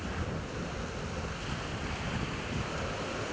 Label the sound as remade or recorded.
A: recorded